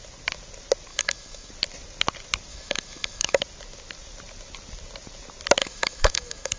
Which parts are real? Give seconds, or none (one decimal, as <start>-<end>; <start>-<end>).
0.0-0.9; 1.5-2.5; 3.4-5.6